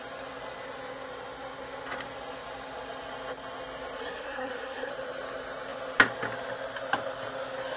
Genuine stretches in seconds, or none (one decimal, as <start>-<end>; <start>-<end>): 0.0-4.0; 4.9-7.8